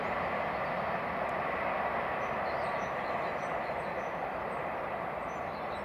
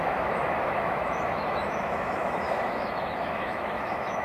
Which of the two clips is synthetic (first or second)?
second